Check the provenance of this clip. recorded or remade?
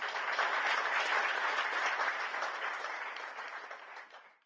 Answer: recorded